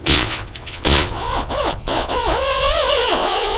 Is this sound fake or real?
fake